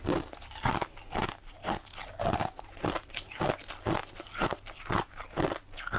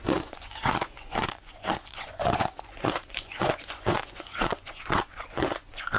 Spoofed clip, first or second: second